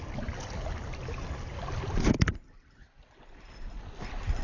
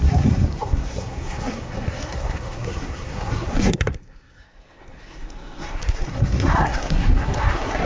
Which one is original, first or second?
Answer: first